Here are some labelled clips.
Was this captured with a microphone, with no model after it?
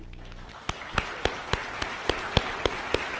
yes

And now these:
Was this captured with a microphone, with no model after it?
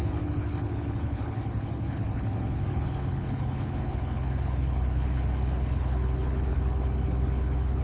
no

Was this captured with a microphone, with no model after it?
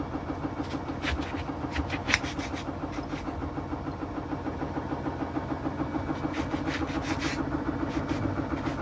yes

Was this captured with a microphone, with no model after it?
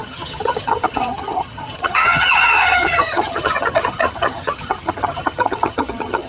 no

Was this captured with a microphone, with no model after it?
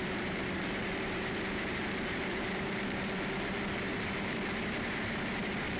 no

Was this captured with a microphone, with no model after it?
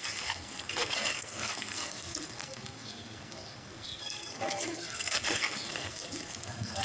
no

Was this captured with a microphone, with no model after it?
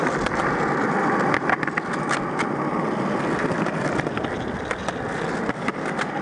yes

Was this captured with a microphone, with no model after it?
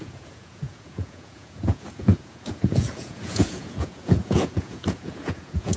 no